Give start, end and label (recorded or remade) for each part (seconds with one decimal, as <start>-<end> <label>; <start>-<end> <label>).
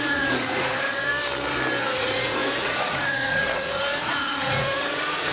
0.0-1.1 remade; 1.1-1.8 recorded; 1.8-5.3 remade